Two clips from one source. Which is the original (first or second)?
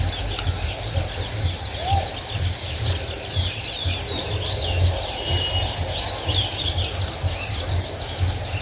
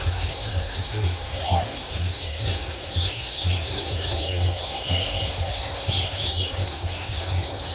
first